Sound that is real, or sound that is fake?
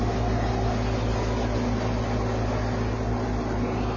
real